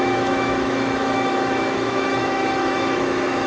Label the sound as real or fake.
fake